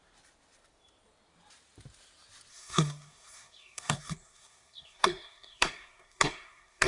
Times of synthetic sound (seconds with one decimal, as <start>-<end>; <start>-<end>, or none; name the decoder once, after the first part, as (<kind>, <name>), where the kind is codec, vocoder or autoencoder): 2.5-6.9 (codec, SNAC)